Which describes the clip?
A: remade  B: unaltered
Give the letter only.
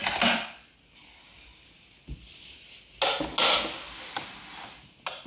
B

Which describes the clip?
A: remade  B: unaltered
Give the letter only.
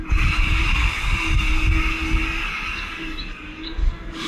A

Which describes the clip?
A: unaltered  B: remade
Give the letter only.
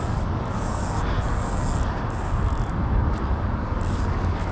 B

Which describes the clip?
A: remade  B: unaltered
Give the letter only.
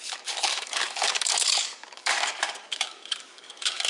A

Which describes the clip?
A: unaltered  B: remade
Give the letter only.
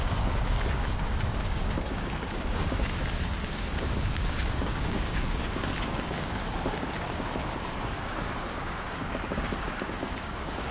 B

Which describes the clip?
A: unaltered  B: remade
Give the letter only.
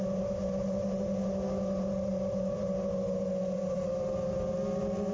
A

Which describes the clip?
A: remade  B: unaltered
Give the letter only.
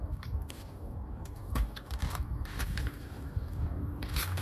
A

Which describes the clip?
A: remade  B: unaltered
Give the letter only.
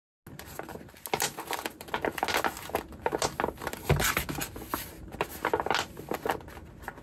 B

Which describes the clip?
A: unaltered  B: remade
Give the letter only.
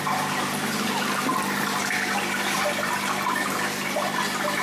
A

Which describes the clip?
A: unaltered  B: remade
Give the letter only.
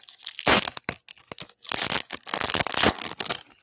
A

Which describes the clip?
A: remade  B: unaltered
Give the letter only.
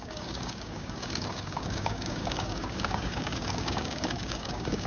A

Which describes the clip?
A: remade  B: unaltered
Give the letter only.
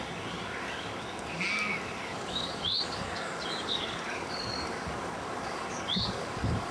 A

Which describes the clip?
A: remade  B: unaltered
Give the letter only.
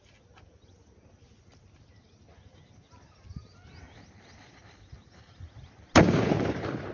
B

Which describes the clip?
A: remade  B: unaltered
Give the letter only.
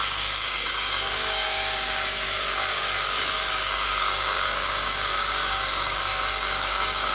A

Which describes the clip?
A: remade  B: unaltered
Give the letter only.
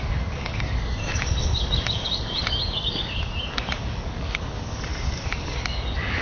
A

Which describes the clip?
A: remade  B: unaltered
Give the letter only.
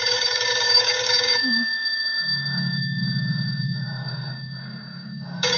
A